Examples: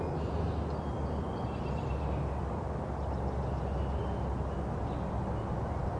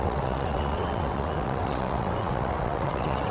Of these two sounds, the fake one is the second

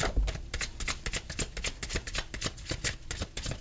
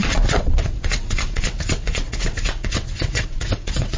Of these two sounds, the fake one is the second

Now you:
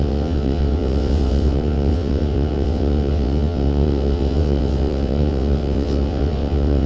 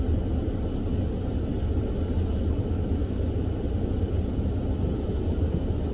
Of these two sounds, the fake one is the first